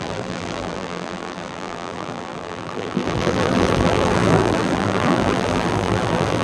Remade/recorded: remade